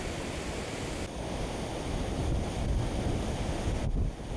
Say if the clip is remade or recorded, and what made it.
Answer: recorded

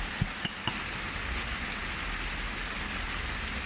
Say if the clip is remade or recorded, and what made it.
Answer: recorded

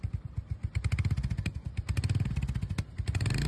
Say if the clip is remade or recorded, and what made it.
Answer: recorded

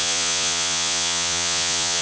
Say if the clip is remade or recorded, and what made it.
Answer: remade, vocoder, Vocos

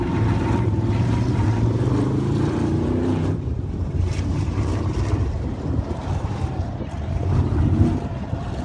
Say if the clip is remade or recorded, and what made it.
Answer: remade, vocoder, BigVGAN v2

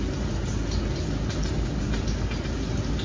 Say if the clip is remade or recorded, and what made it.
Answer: recorded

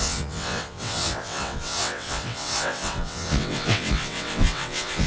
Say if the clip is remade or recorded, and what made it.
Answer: remade, vocoder, WaveNeXt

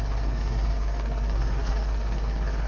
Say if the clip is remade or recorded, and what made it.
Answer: remade, codec, SNAC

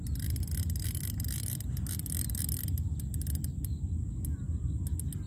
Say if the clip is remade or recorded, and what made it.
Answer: recorded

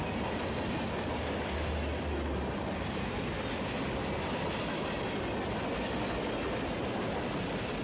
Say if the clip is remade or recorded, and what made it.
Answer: recorded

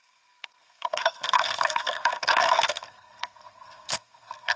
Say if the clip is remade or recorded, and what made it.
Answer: remade, codec, SNAC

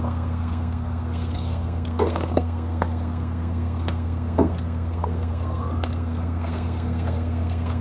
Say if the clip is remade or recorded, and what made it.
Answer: remade, codec, SNAC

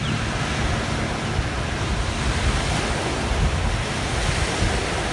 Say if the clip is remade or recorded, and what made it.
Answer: recorded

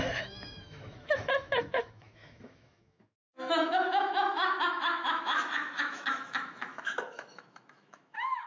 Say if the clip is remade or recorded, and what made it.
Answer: remade, autoencoder, DAC-VAE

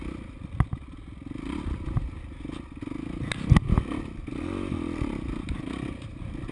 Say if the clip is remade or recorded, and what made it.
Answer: recorded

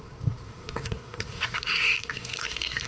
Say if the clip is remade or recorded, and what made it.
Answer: remade, codec, SNAC